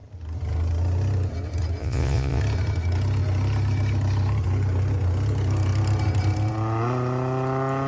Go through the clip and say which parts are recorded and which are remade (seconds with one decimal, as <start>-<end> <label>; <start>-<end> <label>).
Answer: 0.0-1.8 recorded; 1.8-2.4 remade; 2.4-7.9 recorded